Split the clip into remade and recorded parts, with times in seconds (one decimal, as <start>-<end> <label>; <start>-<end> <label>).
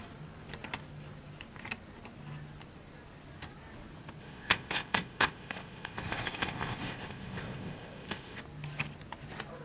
0.0-4.2 recorded; 4.2-8.4 remade; 8.4-9.6 recorded